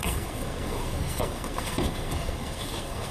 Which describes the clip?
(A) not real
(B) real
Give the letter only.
A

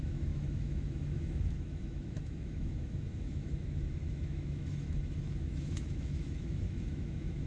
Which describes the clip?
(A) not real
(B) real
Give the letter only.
A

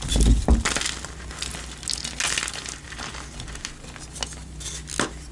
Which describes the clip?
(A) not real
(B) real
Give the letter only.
B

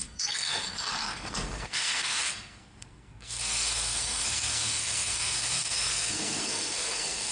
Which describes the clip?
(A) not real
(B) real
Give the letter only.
A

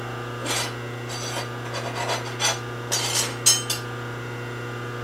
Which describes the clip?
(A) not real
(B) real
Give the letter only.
B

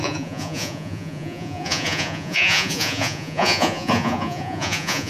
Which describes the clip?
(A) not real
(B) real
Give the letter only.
A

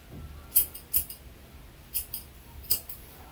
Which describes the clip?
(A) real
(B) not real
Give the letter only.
A